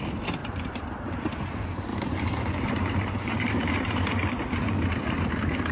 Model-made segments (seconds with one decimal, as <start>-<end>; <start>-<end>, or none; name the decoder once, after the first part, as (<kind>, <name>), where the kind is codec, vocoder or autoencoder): 0.4-1.5 (vocoder, BigVGAN v2); 1.9-5.3